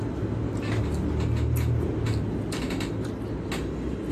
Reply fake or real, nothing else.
real